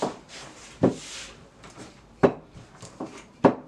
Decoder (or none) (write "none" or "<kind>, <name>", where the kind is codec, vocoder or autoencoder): vocoder, BigVGAN v2